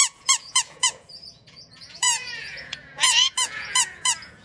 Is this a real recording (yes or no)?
no